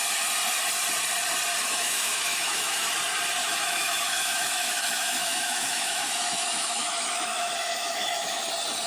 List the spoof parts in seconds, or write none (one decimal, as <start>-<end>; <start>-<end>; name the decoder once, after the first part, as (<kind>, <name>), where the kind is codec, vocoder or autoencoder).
1.6-2.9 (autoencoder, DAC-VAE); 3.4-8.5